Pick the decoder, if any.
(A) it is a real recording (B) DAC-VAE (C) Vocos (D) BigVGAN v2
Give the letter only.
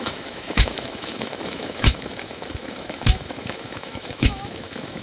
B